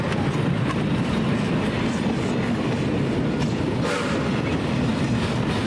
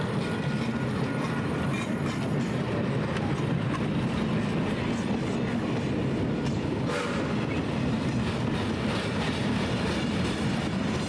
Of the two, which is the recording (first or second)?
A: second